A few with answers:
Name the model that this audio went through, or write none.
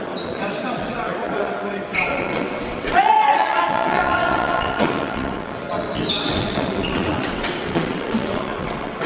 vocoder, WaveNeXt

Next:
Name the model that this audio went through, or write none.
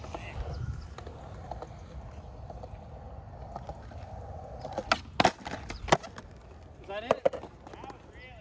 none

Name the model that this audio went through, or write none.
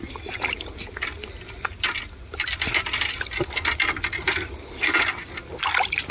none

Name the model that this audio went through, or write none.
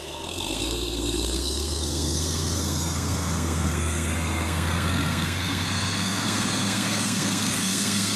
codec, SNAC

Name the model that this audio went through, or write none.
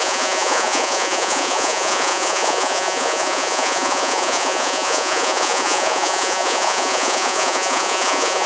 vocoder, Vocos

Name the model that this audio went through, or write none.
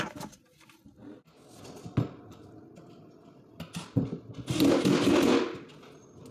none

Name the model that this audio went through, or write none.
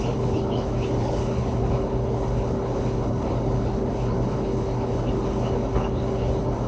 codec, HILCodec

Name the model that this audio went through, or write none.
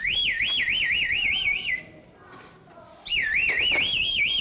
none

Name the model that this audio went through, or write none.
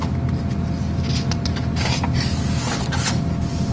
none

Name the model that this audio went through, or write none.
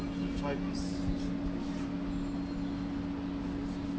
none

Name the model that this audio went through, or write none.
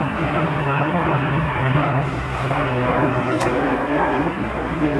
codec, SNAC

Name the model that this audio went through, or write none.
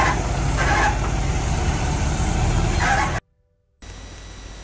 none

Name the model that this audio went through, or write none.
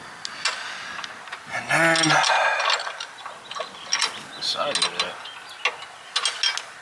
none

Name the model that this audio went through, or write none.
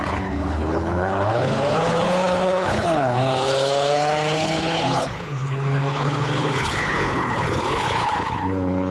codec, HILCodec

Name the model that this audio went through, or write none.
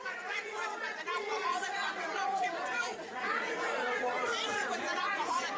vocoder, Vocos